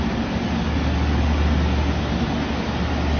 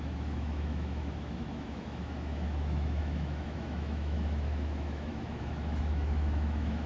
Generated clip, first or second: second